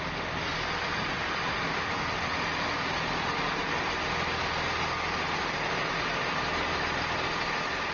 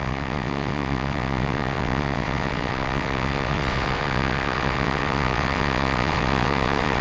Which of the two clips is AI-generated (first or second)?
second